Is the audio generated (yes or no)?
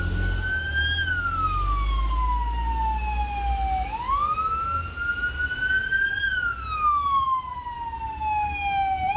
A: no